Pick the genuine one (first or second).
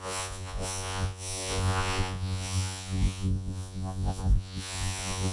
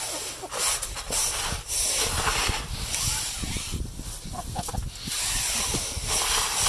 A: second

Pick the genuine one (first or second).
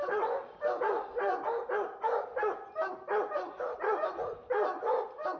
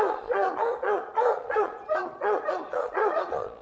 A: first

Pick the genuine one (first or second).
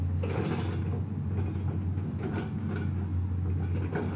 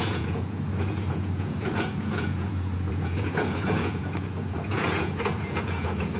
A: first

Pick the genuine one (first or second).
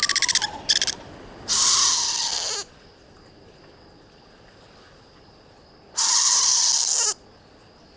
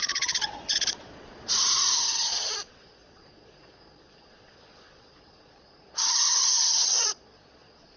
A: first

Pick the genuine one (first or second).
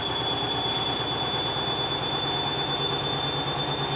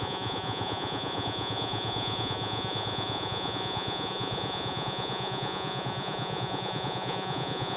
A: first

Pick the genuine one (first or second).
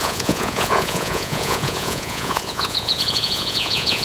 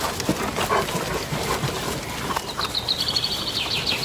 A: second